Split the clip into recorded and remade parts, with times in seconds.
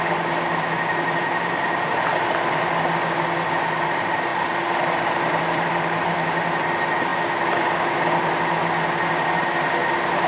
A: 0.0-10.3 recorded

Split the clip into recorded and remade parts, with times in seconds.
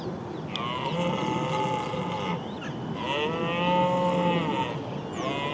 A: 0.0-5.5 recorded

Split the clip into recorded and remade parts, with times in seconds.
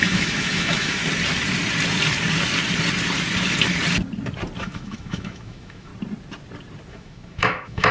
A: 0.0-1.0 remade; 1.0-4.6 recorded; 4.6-5.9 remade; 5.9-6.9 recorded; 6.9-7.9 remade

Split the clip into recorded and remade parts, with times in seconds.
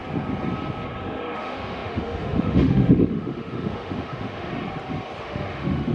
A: 0.0-1.0 recorded; 1.0-4.5 remade; 4.5-5.2 recorded; 5.2-5.9 remade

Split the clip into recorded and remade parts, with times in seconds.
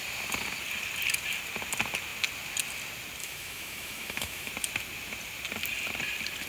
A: 0.0-3.2 recorded; 3.2-4.5 remade; 4.5-6.5 recorded